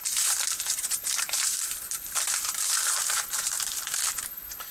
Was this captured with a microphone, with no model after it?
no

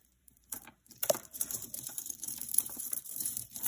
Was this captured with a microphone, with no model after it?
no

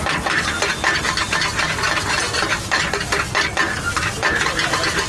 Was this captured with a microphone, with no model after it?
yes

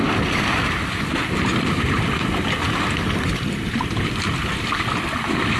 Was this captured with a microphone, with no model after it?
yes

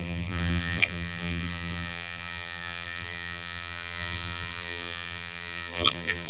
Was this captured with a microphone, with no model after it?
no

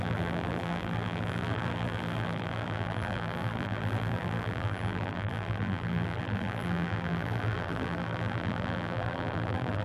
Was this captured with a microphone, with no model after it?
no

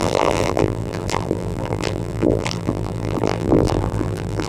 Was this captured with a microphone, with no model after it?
no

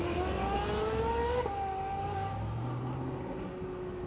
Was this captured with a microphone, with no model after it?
yes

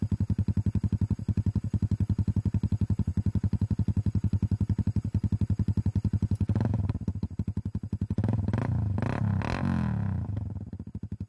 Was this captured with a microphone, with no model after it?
yes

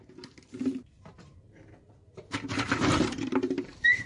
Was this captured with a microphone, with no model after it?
no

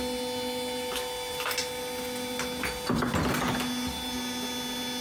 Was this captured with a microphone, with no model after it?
yes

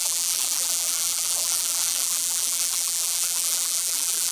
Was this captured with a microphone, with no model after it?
no